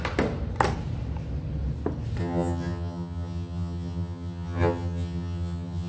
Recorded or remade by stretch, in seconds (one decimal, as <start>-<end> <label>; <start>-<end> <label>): 0.0-2.2 recorded; 2.2-5.9 remade